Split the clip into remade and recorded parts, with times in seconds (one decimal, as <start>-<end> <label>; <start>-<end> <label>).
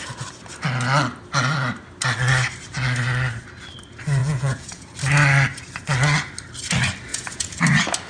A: 0.0-4.2 recorded; 4.2-5.0 remade; 5.0-7.1 recorded; 7.1-7.6 remade; 7.6-8.1 recorded